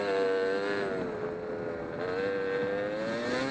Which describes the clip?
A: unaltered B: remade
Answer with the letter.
A